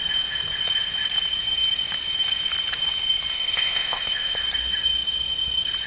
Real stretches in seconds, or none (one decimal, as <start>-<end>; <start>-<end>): 0.0-3.3; 4.4-5.9